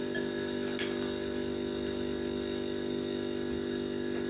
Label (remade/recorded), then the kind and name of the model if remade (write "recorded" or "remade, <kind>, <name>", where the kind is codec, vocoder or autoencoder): recorded